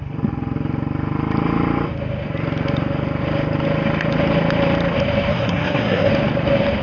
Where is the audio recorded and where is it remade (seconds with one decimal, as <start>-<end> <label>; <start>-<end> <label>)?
0.0-5.3 recorded; 5.3-6.1 remade; 6.1-6.8 recorded